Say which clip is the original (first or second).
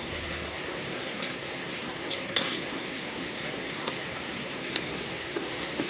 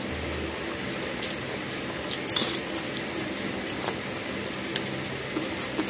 second